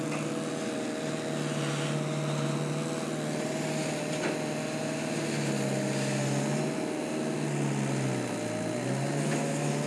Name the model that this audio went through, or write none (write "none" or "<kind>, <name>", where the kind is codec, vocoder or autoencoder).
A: none